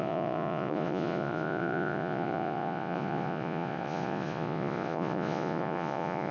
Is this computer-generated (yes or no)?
yes